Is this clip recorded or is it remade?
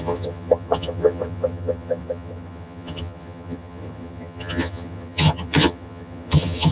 remade